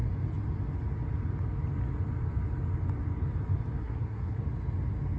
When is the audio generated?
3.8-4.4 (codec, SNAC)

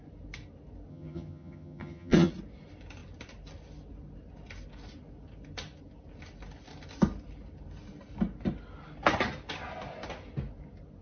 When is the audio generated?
0.9-2.3 (vocoder, HiFi-GAN)

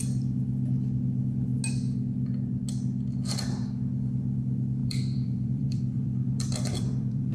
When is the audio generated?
4.8-7.3 (vocoder, BigVGAN v2)

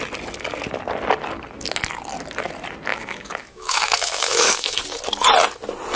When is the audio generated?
2.9-4.8 (autoencoder, DAC-VAE)

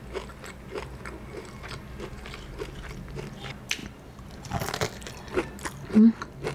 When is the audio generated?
none

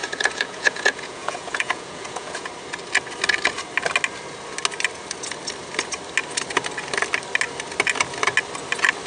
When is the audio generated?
0.0-2.5 (vocoder, Vocos)

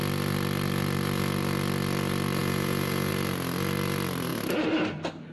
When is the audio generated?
2.4-3.1 (vocoder, Vocos)

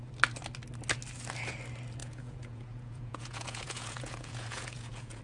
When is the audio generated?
2.0-5.2 (vocoder, Vocos)